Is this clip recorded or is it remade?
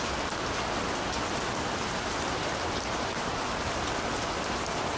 recorded